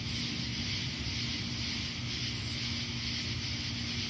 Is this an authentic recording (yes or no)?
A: yes